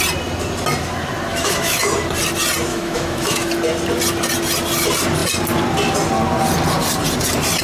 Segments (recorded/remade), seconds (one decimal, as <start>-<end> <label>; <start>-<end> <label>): 0.0-1.3 recorded; 1.3-1.9 remade; 1.9-2.7 recorded; 2.7-3.5 remade; 3.5-7.6 recorded